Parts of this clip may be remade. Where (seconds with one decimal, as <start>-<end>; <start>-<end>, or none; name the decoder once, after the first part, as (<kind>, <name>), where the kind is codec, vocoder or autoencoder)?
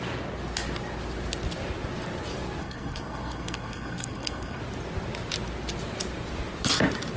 2.6-4.6 (codec, SNAC)